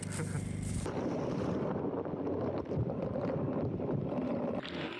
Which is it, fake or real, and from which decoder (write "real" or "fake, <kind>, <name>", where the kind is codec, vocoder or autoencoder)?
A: real